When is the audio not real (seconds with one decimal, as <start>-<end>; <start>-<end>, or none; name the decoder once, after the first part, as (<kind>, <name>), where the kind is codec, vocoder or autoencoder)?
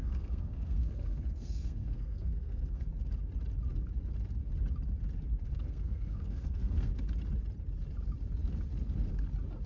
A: 0.0-2.9 (codec, SNAC); 5.5-6.9